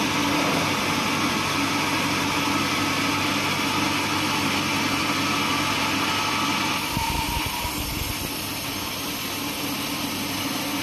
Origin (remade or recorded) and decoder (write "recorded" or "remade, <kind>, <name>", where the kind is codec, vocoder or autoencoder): recorded